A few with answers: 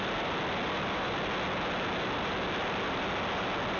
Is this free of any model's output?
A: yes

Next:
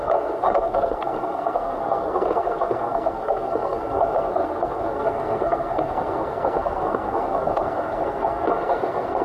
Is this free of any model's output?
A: no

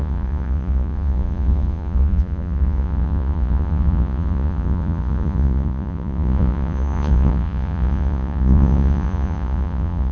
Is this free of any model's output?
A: no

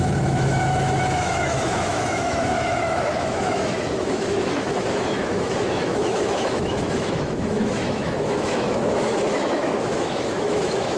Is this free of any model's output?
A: no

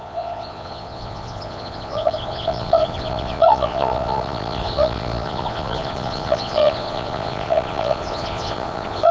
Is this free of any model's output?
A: no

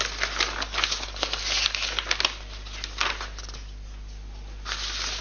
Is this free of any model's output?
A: yes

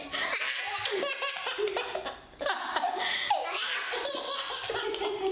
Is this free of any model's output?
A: yes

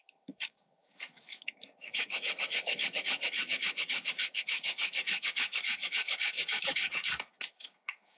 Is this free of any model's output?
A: no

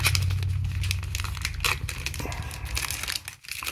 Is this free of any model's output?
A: yes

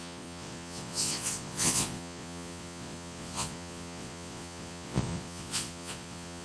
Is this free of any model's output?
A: no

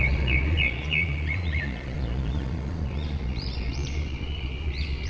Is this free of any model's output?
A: no